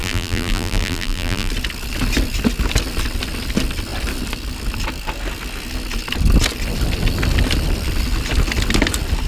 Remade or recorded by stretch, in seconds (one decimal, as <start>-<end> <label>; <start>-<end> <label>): 0.0-1.5 remade; 1.5-9.3 recorded